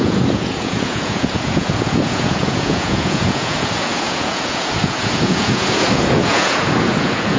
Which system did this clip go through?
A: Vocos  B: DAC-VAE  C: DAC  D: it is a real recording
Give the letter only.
A